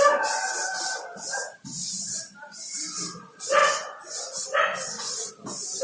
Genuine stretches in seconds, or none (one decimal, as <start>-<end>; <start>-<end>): 0.0-3.6; 5.3-5.8